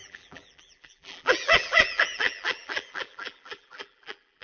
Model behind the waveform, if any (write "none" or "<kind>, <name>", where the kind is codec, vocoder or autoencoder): vocoder, BigVGAN v2